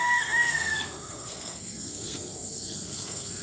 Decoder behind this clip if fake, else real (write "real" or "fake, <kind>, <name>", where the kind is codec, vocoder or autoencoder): fake, codec, SNAC